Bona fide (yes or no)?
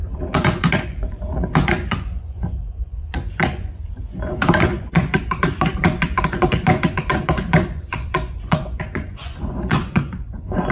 no